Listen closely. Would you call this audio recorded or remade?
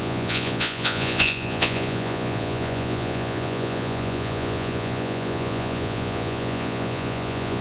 remade